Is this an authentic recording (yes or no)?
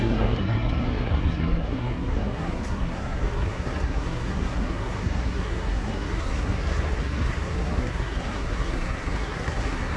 no